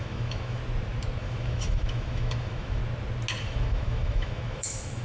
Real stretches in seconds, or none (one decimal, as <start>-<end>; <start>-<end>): 0.6-1.2; 2.8-3.4